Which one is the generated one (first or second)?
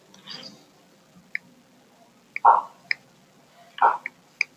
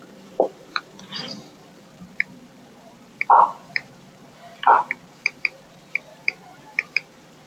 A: second